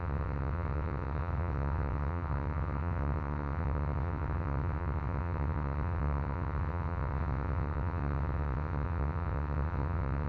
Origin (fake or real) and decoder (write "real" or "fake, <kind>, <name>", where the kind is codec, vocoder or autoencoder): fake, vocoder, WaveNeXt